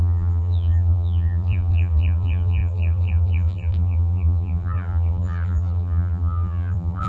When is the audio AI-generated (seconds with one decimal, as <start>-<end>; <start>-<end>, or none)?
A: 0.0-7.1